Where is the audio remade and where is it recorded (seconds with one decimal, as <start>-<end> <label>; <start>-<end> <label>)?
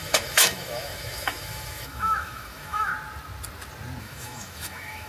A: 0.0-2.9 remade; 2.9-4.0 recorded; 4.0-5.1 remade